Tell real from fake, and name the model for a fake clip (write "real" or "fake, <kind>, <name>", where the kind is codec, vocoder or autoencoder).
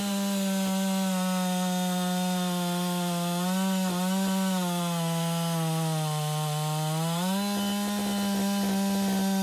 real